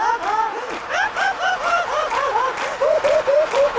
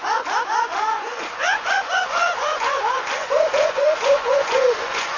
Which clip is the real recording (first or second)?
first